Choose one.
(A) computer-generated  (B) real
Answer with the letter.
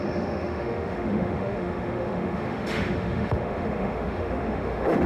A